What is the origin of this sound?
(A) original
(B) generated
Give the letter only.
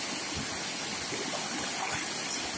A